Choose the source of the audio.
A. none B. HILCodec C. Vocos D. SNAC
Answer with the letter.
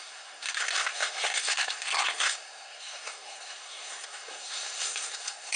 D